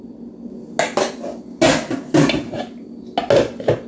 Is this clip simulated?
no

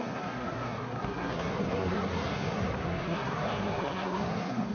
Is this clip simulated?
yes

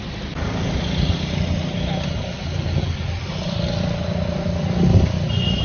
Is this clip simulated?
no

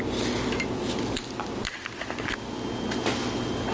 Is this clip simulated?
no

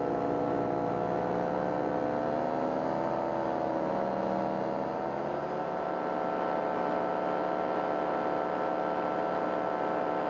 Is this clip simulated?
no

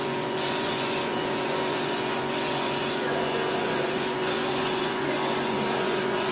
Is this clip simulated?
yes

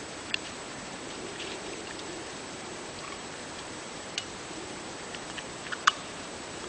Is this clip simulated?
yes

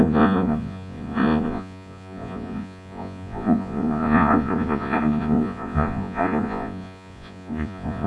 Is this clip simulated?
yes